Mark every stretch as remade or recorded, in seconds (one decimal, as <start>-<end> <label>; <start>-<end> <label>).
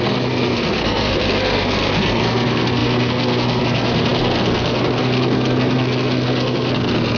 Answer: 0.0-7.2 remade